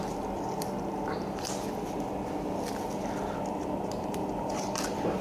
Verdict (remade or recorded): recorded